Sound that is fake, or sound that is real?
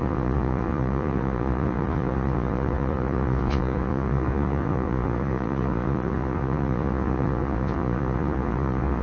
fake